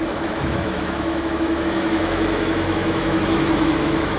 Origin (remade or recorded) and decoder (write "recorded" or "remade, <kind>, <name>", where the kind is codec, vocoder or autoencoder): remade, autoencoder, DAC-VAE